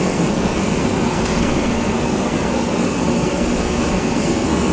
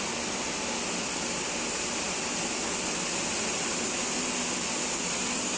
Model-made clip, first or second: first